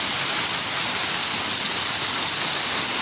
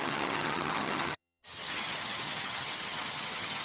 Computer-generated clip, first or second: second